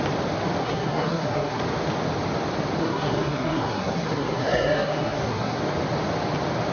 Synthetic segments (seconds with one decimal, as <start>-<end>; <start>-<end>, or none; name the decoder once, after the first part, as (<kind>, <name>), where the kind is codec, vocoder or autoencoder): 0.6-1.6 (codec, SNAC); 2.8-5.6